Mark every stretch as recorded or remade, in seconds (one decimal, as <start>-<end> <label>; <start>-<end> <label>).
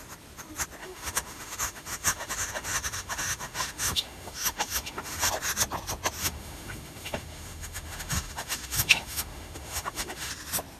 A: 0.0-0.8 recorded; 0.8-5.3 remade; 5.3-6.2 recorded; 6.2-10.3 remade; 10.3-10.8 recorded